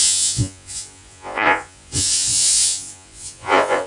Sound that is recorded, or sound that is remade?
remade